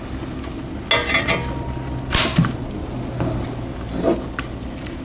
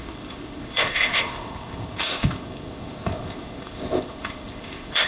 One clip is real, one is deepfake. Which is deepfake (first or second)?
second